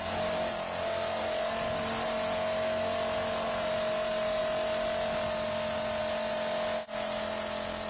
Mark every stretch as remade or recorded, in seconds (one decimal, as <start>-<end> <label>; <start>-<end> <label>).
0.0-7.9 recorded